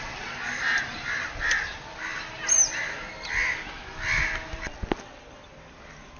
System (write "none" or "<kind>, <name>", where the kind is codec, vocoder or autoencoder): none